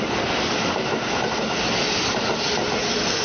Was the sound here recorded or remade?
recorded